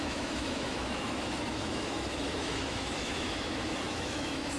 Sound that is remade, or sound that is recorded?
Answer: remade